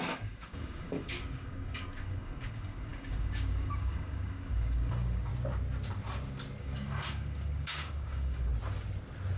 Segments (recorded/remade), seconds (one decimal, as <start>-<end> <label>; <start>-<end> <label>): 0.0-5.3 remade; 5.3-6.6 recorded; 6.6-8.5 remade; 8.5-9.4 recorded